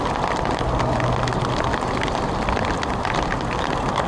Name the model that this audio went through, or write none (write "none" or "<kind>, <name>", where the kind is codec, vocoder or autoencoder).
none